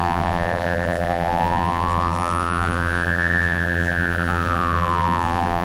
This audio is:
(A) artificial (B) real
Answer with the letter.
A